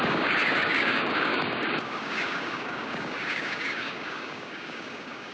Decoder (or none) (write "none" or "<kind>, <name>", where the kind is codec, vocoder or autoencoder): codec, DAC